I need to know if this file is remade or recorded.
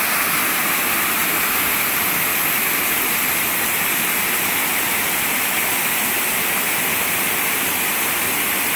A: recorded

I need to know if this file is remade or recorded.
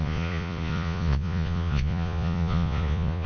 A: remade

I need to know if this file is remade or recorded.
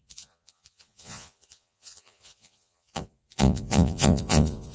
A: remade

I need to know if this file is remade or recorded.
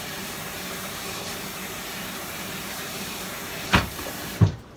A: remade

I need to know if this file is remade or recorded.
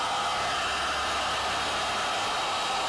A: recorded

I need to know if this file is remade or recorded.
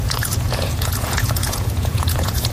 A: remade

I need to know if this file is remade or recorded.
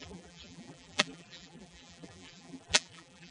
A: remade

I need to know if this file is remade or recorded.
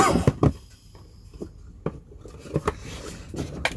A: recorded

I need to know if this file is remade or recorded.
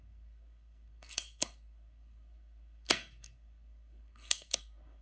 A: remade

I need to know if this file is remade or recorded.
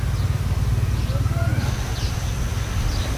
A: recorded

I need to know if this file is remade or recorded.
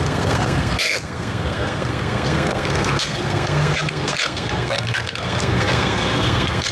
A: remade